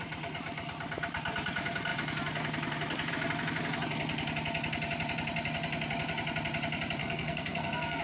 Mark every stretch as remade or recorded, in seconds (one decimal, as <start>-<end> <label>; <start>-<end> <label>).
0.0-7.0 recorded; 7.0-8.0 remade